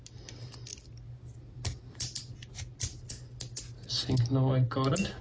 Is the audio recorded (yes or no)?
yes